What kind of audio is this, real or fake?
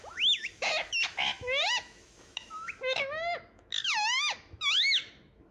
fake